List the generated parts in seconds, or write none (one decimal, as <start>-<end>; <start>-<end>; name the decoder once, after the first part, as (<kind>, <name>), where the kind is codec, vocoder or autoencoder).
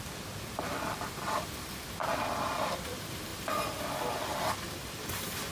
0.0-5.5 (vocoder, BigVGAN v2)